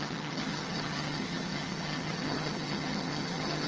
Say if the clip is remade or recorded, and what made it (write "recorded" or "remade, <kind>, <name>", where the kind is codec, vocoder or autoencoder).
remade, vocoder, HiFi-GAN